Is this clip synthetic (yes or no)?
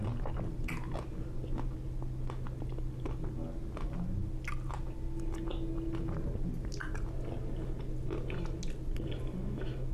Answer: no